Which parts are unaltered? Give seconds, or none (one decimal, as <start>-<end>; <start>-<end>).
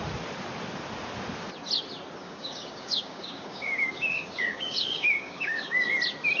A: 0.0-2.2; 6.0-6.4